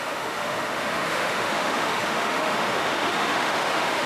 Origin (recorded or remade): remade